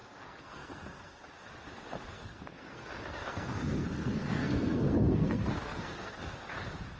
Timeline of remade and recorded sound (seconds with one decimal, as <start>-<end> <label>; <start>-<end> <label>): 0.0-1.2 remade; 1.2-2.1 recorded; 2.1-6.3 remade; 6.3-7.0 recorded